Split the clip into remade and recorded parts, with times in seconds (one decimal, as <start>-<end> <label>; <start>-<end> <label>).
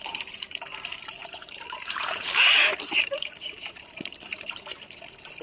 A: 0.0-5.4 remade